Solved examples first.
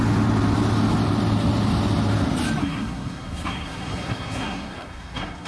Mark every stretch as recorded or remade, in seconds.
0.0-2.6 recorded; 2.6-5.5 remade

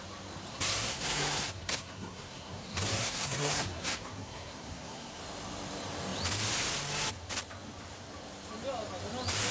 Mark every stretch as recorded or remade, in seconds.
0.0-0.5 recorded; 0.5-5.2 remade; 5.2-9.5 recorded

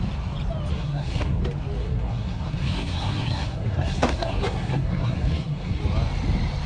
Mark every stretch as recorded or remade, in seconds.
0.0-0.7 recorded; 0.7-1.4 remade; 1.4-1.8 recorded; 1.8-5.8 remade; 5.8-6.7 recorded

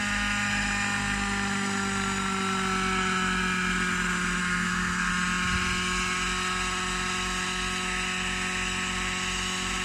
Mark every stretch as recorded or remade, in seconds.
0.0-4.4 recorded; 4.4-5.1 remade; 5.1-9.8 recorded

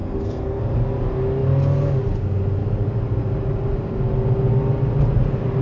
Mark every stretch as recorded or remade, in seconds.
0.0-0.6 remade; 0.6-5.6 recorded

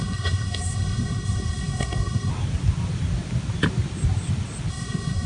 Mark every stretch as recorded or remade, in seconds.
0.0-2.3 remade; 2.3-4.7 recorded; 4.7-5.3 remade